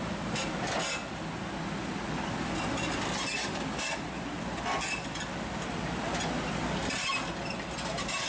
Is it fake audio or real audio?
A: real